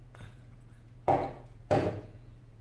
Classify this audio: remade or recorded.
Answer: remade